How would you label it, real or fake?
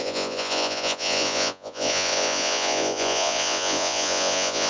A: fake